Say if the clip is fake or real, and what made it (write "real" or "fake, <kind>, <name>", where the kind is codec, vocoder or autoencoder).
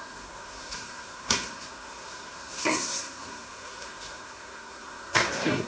fake, codec, SNAC